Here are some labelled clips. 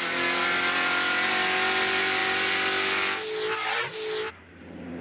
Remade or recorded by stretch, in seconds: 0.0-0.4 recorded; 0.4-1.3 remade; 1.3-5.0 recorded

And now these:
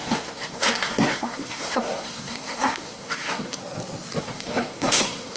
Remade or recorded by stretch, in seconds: 0.0-3.6 remade; 3.6-4.2 recorded; 4.2-5.4 remade

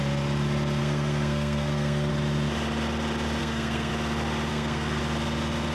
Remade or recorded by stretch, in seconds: 0.0-0.8 recorded; 0.8-2.1 remade; 2.1-3.4 recorded; 3.4-3.9 remade; 3.9-4.5 recorded; 4.5-5.0 remade; 5.0-5.7 recorded

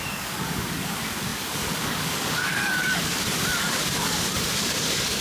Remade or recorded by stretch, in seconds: 0.0-5.2 remade

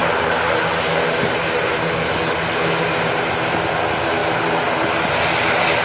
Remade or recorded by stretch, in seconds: 0.0-5.8 recorded

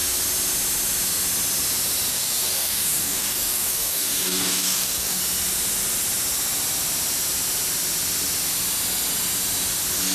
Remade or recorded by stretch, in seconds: 0.0-2.1 recorded; 2.1-5.2 remade; 5.2-10.1 recorded

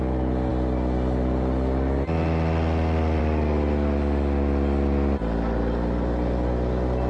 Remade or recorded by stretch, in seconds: 0.0-7.1 recorded